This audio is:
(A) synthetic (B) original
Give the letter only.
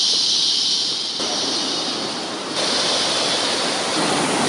A